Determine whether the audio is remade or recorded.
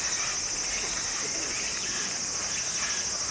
recorded